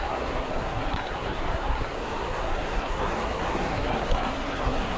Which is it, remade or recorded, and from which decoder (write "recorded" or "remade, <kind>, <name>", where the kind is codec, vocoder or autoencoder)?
remade, codec, SNAC